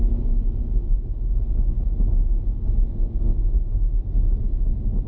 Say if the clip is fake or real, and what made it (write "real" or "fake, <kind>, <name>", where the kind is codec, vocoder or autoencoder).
real